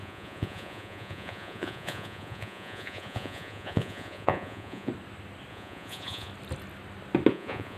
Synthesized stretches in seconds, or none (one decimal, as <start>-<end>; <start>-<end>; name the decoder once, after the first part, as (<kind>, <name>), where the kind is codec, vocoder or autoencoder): 0.0-4.9 (vocoder, Vocos); 5.5-6.3; 7.3-7.8